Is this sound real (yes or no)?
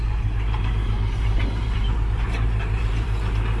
no